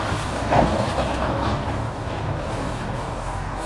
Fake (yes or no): yes